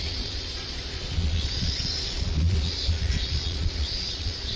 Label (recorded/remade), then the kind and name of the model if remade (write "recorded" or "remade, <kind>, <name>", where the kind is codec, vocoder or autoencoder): remade, vocoder, Vocos